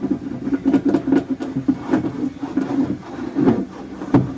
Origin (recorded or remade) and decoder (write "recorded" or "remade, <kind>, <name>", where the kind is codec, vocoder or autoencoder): recorded